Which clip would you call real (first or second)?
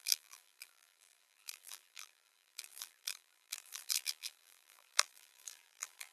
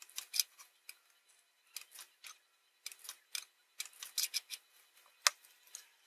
second